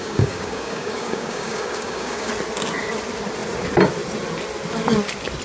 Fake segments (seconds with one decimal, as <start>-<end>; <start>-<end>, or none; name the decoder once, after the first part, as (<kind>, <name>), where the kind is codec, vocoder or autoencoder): 0.0-2.3 (codec, DAC)